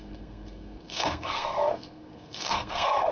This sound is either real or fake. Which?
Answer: fake